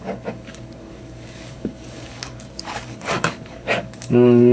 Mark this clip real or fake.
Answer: fake